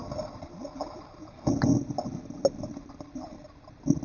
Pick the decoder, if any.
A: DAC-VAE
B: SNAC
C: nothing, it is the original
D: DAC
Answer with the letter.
C